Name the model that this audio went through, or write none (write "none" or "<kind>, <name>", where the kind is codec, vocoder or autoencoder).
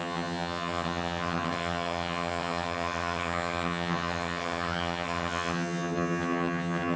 vocoder, HiFi-GAN